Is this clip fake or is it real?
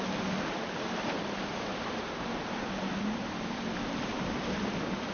fake